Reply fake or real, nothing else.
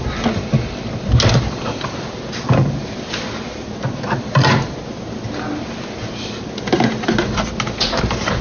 real